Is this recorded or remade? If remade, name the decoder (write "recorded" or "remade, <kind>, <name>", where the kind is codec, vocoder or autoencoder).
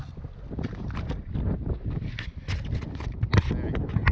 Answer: recorded